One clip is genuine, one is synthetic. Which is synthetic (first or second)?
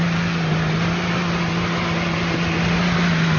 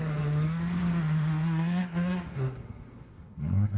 second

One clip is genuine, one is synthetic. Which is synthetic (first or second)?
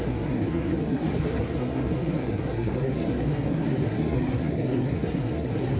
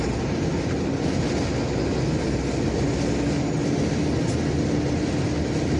first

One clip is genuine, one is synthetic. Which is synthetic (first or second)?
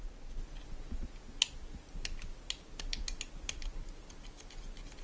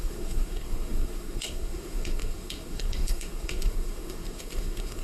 second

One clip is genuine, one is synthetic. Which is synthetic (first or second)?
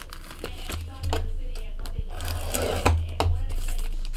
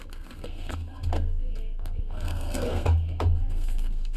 second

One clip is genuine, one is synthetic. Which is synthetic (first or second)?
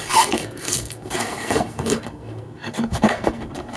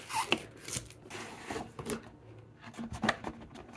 first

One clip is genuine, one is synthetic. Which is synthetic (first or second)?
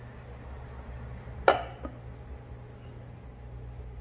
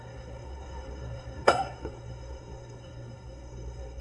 second